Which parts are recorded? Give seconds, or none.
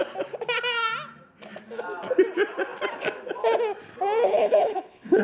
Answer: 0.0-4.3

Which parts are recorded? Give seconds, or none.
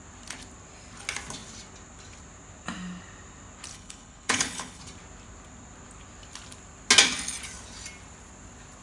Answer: 0.0-3.7; 4.8-8.8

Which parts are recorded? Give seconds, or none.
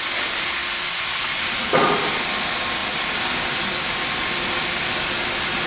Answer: 0.0-5.7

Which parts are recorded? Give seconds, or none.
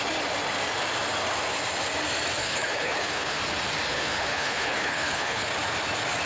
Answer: 0.0-2.4; 3.4-3.9; 5.5-6.3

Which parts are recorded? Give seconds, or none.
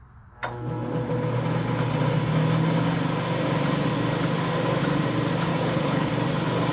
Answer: 0.0-5.5; 6.1-6.7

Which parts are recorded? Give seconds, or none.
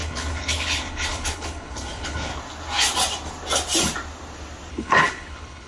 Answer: 2.3-4.7